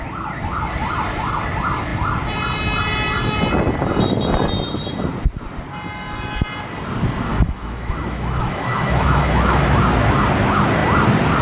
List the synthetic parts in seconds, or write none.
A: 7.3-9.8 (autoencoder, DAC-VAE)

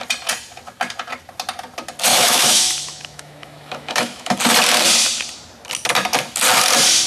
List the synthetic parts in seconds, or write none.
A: 2.1-4.3 (autoencoder, DAC-VAE)

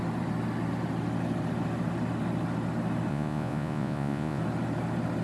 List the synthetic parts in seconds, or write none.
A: 3.1-4.4 (vocoder, Vocos)

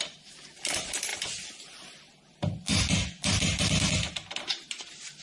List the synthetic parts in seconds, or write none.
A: none

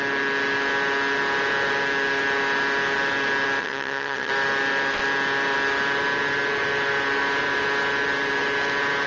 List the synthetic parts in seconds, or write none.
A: 3.6-4.3 (vocoder, HiFi-GAN)

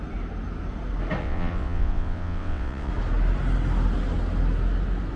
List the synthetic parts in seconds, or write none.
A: 1.2-2.9 (vocoder, WaveNeXt)